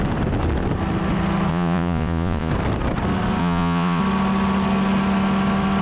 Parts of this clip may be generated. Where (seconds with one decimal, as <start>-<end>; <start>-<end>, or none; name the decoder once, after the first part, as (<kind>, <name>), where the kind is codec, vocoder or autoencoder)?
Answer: 1.5-2.5 (vocoder, Vocos); 3.4-4.0